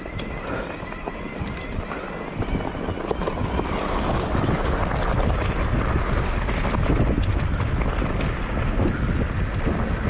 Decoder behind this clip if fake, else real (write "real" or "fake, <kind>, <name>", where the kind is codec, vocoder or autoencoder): real